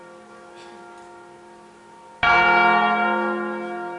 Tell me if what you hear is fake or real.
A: real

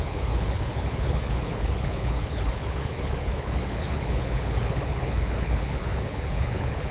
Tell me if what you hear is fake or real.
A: fake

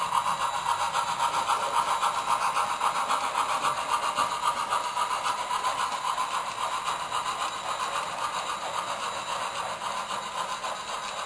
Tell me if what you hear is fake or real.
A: real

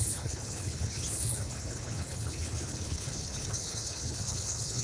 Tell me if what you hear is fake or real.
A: fake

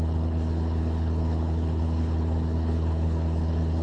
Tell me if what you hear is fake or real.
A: fake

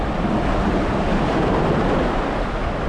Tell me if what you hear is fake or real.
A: real